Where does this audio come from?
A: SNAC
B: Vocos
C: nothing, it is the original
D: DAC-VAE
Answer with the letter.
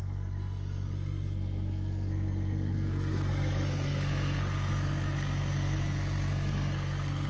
A